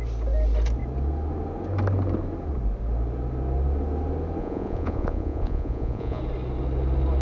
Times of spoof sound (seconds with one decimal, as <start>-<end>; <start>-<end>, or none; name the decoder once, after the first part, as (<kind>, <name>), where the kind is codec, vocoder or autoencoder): 4.4-6.2 (vocoder, Vocos)